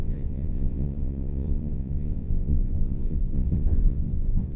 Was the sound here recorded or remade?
remade